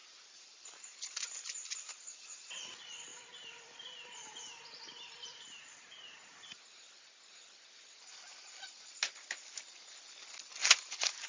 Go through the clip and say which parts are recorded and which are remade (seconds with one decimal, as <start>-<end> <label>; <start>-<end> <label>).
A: 0.0-2.5 remade; 2.5-3.1 recorded; 3.1-6.6 remade; 6.6-10.6 recorded; 10.6-11.3 remade